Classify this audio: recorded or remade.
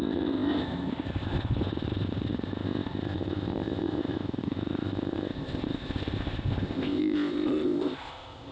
remade